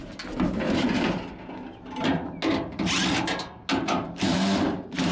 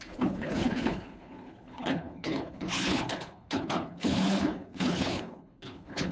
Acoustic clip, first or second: first